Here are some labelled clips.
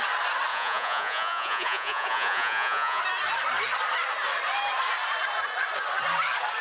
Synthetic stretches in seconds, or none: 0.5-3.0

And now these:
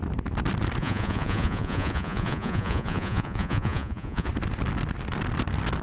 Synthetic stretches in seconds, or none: 0.8-4.3

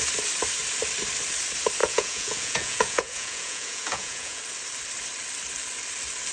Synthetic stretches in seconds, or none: 1.8-4.4

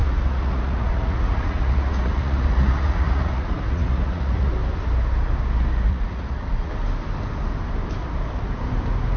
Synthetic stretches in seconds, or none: 0.0-4.5; 5.9-6.7

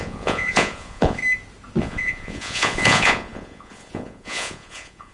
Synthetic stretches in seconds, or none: 0.0-1.2; 1.8-5.1